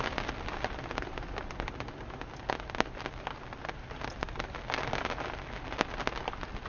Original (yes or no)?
yes